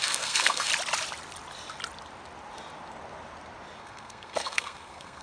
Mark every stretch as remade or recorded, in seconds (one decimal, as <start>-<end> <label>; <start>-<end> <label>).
0.0-0.7 remade; 0.7-3.8 recorded; 3.8-5.2 remade